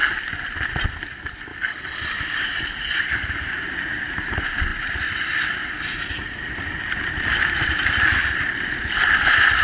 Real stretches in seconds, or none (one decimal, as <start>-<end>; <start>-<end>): 0.7-1.5; 3.6-6.2; 8.8-9.6